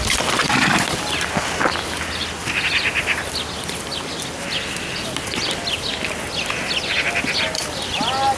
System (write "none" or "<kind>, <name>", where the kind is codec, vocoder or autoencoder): none